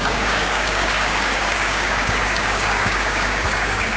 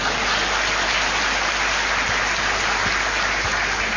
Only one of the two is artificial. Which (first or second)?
first